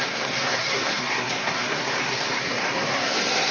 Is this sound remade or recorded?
remade